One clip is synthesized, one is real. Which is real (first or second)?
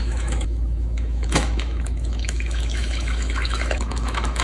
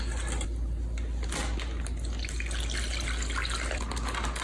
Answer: second